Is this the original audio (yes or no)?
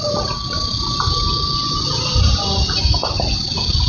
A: yes